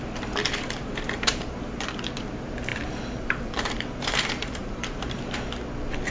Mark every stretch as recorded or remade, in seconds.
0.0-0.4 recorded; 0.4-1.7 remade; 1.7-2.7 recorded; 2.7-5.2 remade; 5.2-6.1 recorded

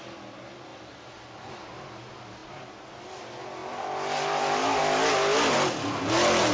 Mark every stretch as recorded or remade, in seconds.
0.0-6.5 recorded

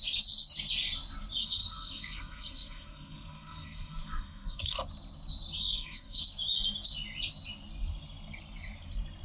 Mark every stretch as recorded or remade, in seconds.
0.0-1.4 recorded; 1.4-4.8 remade; 4.8-5.6 recorded; 5.6-6.2 remade; 6.2-9.2 recorded